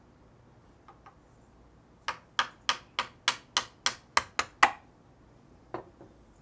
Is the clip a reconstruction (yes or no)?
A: no